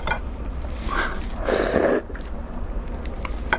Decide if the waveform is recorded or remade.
remade